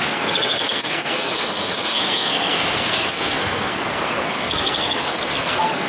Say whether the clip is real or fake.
fake